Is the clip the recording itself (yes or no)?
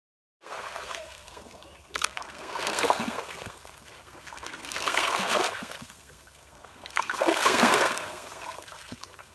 no